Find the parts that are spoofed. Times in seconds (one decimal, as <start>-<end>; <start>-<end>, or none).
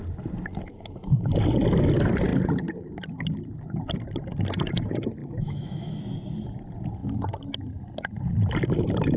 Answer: 0.7-1.3; 5.2-6.0